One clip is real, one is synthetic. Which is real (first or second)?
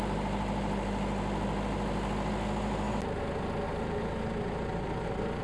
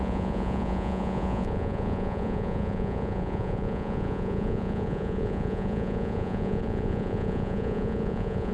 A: first